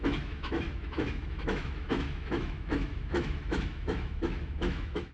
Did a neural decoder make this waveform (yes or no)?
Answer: yes